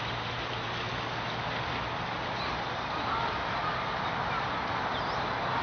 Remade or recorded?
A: recorded